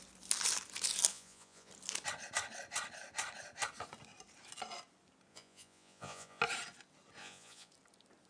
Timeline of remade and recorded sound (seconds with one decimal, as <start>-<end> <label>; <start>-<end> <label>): 0.0-1.1 recorded; 1.1-1.7 remade; 1.7-5.3 recorded; 5.3-6.4 remade; 6.4-7.2 recorded; 7.2-7.7 remade; 7.7-8.3 recorded